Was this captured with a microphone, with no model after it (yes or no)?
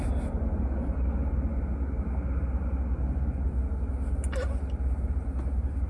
yes